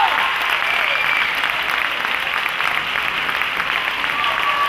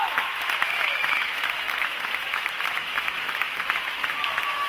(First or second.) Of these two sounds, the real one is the first